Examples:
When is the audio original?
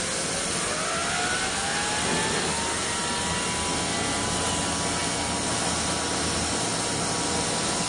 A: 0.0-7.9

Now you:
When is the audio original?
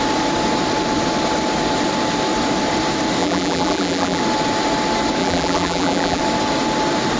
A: 0.0-3.2; 4.2-5.2; 6.2-7.2